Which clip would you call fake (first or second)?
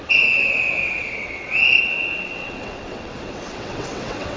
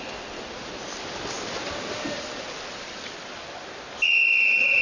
first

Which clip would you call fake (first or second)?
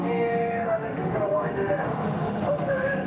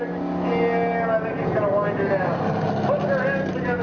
first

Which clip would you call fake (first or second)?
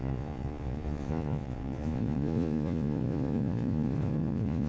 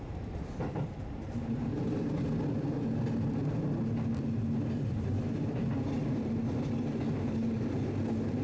first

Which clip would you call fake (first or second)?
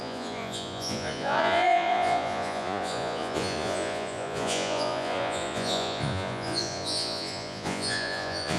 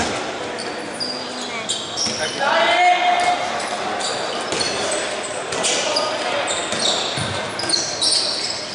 first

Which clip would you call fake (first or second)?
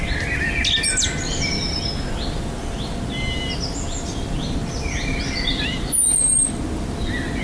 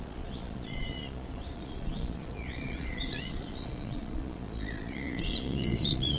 second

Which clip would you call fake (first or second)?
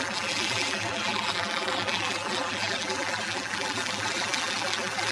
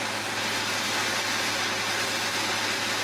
first